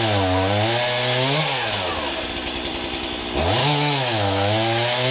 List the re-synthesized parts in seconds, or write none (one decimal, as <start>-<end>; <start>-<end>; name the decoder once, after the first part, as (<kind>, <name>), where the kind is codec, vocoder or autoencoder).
3.6-5.1 (autoencoder, DAC-VAE)